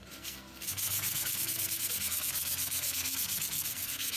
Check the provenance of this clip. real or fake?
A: fake